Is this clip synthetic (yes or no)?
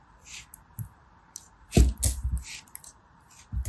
no